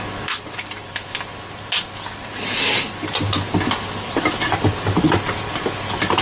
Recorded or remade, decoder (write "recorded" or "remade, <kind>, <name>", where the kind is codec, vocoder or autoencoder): recorded